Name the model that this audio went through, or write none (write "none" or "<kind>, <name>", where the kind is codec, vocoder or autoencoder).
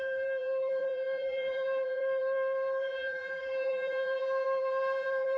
vocoder, BigVGAN v2